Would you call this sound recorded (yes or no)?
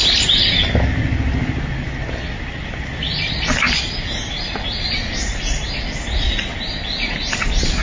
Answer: yes